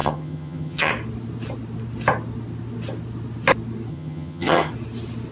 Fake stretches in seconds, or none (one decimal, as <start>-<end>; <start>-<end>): 0.0-0.9; 3.9-4.7